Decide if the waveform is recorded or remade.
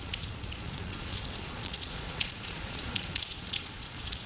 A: remade